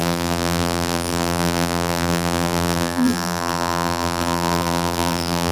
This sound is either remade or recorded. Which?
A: remade